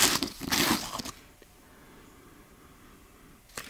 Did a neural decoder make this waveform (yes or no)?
no